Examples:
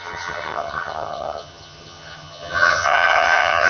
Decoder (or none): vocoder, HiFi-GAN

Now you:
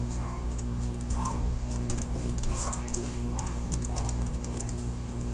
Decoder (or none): codec, DAC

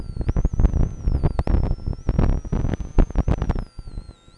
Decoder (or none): none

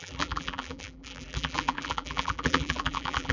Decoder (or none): vocoder, BigVGAN v2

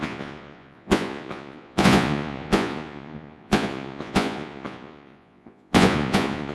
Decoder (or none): vocoder, Vocos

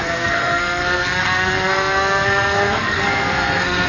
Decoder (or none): codec, SNAC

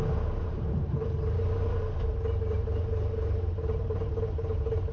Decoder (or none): vocoder, BigVGAN v2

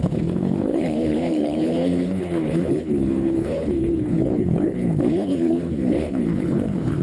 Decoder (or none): codec, HILCodec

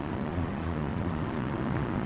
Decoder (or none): vocoder, Vocos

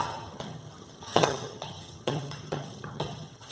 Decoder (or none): vocoder, HiFi-GAN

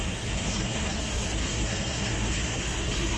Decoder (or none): codec, SNAC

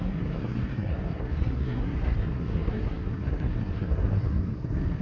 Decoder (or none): codec, SNAC